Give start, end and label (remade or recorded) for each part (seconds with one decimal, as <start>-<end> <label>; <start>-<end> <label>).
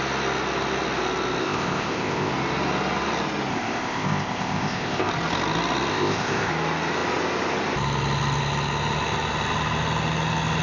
0.0-1.4 recorded; 1.4-2.3 remade; 2.3-3.5 recorded; 3.5-5.1 remade; 5.1-5.9 recorded; 5.9-6.5 remade; 6.5-10.6 recorded